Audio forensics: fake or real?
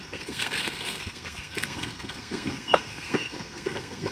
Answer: fake